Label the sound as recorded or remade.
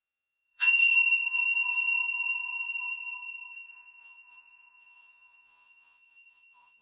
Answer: remade